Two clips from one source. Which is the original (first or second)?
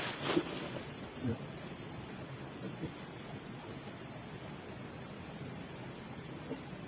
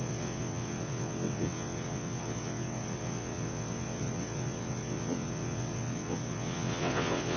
first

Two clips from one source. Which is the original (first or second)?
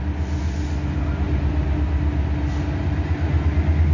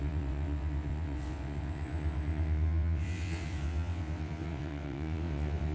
first